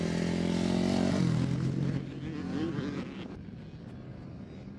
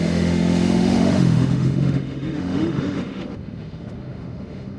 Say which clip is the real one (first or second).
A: first